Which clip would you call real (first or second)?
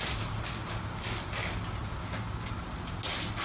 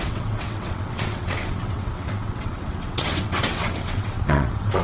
first